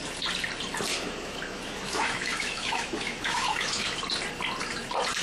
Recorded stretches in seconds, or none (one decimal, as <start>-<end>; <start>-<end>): 0.0-0.9; 4.0-5.2